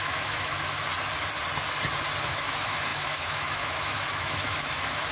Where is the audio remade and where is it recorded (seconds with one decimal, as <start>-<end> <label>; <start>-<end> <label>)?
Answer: 0.0-0.9 remade; 0.9-2.2 recorded; 2.2-5.1 remade